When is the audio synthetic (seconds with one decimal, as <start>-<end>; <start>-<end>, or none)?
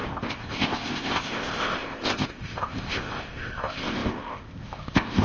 0.0-5.2